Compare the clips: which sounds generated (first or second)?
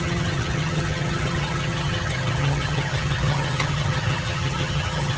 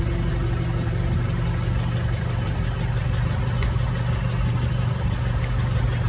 first